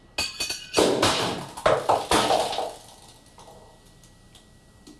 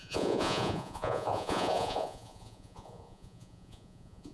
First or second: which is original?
first